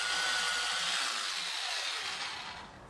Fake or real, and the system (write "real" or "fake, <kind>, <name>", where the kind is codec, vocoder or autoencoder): real